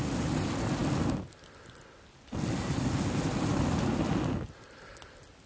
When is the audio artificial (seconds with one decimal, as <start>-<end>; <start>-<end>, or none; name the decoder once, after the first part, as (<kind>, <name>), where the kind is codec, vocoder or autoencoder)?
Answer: none